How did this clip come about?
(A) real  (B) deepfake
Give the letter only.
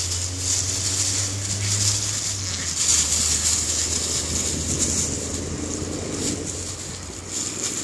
A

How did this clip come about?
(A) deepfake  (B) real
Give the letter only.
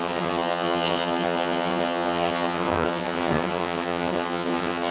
A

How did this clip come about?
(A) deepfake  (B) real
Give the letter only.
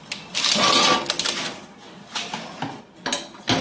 B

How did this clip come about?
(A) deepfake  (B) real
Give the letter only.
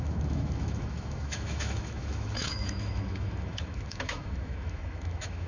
A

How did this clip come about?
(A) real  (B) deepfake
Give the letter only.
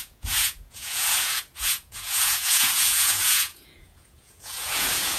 B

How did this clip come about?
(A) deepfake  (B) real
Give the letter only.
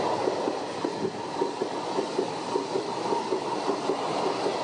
B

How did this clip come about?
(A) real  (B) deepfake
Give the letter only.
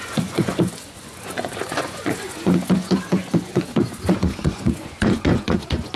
B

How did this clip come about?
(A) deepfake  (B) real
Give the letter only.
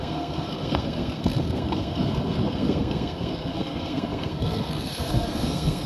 A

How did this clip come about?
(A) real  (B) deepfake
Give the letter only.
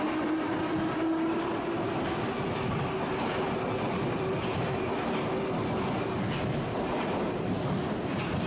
A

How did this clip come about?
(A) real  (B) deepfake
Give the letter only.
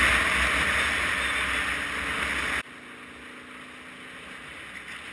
A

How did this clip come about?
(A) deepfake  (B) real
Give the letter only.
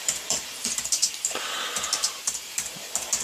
A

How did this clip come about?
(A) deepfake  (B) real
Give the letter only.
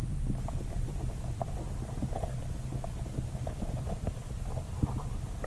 B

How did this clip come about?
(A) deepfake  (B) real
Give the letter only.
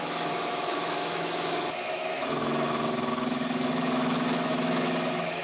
A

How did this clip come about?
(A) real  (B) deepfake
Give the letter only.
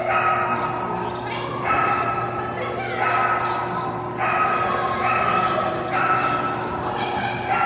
A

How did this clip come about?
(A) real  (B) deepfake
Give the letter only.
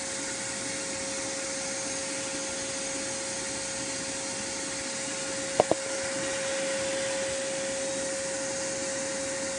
A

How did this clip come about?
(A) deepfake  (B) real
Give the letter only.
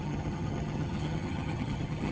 A